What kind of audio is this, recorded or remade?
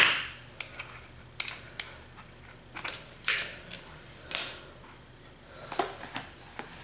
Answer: recorded